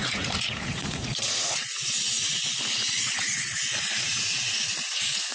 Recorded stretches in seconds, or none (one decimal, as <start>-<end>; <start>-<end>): none